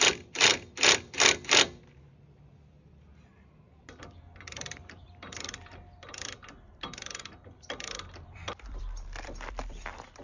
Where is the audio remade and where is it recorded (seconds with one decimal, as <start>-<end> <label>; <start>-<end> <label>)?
0.0-0.5 remade; 0.5-4.0 recorded; 4.0-10.2 remade